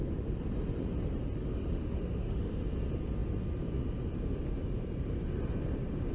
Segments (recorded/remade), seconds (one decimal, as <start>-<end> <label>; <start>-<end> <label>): 0.0-1.4 recorded; 1.4-2.7 remade; 2.7-6.1 recorded